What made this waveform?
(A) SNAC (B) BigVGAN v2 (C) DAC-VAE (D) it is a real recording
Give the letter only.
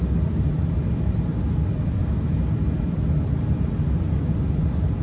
D